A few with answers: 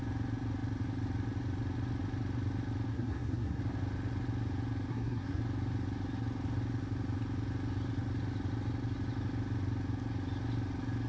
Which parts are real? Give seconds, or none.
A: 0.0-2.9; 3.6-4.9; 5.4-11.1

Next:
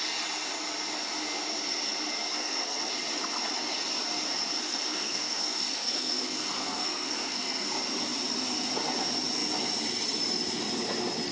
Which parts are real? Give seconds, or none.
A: 0.0-2.3; 2.9-4.6; 7.7-11.3

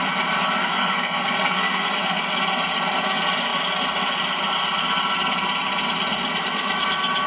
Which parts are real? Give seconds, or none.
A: 0.0-0.6; 2.2-7.3

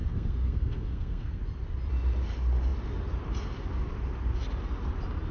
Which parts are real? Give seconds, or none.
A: 1.4-5.3

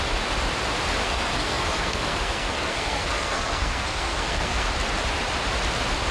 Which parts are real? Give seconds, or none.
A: 0.0-1.0; 4.7-6.1

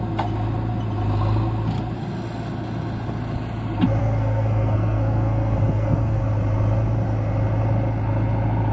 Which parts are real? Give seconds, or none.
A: 0.0-4.0; 6.2-8.7

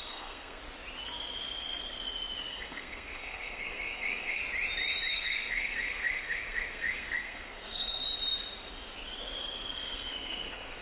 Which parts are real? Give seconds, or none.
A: 0.6-2.5; 4.4-5.1; 8.0-9.4